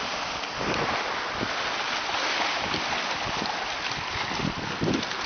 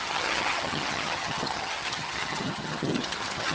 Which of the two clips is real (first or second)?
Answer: first